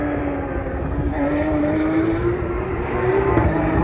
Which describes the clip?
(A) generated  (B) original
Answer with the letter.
A